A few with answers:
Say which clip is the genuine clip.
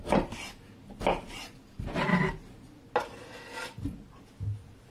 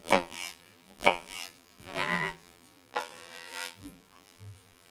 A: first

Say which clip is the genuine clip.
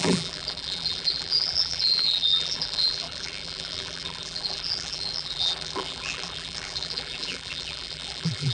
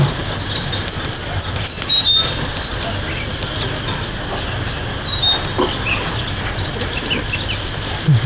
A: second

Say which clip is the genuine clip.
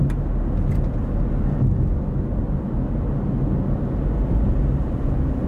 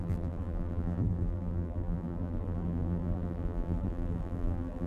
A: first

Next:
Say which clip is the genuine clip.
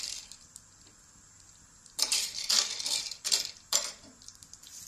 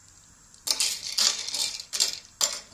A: second